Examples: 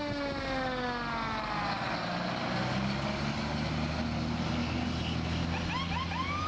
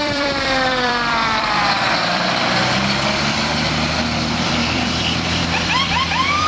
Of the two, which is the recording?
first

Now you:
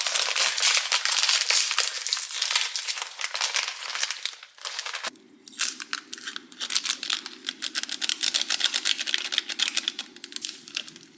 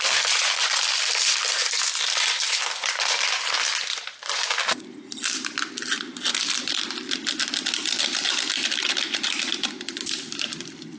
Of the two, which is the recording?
first